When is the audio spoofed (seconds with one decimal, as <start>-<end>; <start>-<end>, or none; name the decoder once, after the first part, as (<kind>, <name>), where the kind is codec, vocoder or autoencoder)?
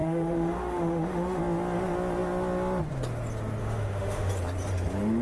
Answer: 0.0-1.4 (autoencoder, DAC-VAE); 3.6-4.3